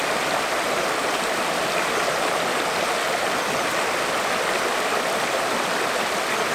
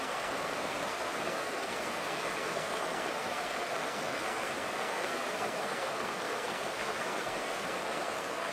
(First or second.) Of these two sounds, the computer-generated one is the second